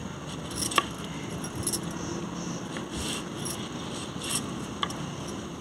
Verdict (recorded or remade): recorded